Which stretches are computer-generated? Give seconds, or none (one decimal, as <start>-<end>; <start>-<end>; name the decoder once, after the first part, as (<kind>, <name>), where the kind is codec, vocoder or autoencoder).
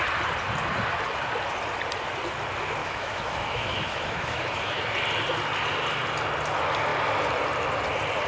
2.8-4.8 (autoencoder, DAC-VAE)